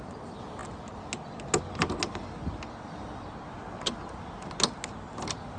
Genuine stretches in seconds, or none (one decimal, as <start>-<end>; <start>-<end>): 0.0-5.6